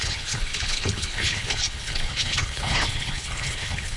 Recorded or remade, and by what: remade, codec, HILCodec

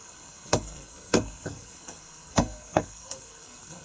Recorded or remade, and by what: remade, codec, SNAC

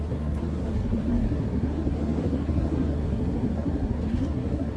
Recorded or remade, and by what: remade, codec, SNAC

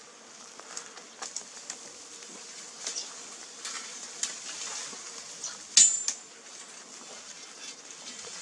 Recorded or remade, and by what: recorded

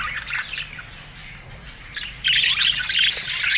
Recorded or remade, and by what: recorded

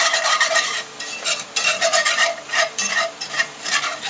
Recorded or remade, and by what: remade, vocoder, BigVGAN v2